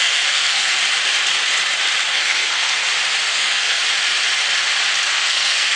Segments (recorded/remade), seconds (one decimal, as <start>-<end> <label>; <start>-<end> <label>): 0.0-0.8 remade; 0.8-2.1 recorded; 2.1-2.8 remade; 2.8-3.3 recorded; 3.3-3.8 remade; 3.8-5.1 recorded; 5.1-5.8 remade